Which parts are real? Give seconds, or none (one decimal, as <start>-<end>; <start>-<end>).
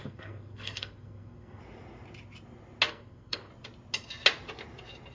1.6-2.9; 3.5-5.1